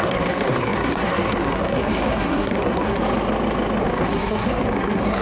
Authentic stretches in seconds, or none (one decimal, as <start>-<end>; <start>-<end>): 3.0-3.8